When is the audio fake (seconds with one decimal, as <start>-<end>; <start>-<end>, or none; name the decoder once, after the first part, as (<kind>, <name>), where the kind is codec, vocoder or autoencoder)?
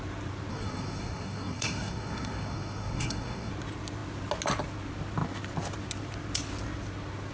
0.5-3.5 (codec, SNAC)